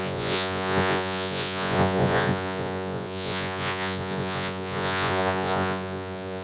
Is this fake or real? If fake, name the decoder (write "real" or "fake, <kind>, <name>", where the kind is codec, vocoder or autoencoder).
fake, vocoder, Vocos